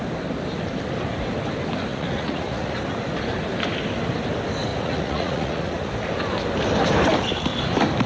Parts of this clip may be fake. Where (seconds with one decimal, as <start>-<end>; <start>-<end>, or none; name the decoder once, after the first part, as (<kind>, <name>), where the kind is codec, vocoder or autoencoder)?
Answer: 1.9-2.7 (vocoder, Vocos); 4.7-5.9